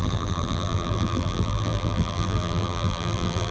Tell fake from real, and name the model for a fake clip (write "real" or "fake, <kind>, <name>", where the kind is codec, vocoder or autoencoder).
fake, vocoder, BigVGAN v2